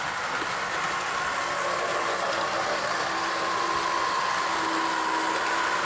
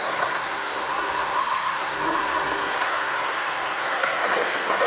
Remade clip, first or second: second